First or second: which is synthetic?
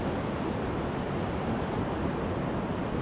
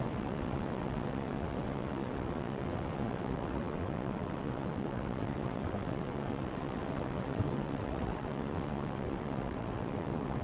second